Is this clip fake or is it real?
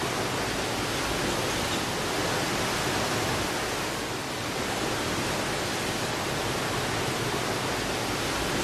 real